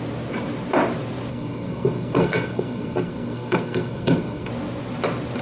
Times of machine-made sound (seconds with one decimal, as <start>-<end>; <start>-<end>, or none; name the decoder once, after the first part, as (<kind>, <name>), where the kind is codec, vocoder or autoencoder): 1.3-4.5 (codec, SNAC)